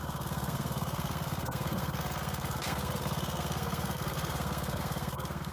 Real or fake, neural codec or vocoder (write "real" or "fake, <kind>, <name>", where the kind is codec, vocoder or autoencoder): fake, codec, SNAC